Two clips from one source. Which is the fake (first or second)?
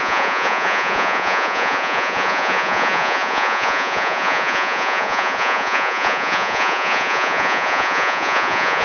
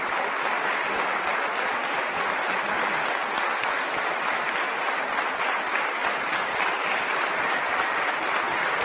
first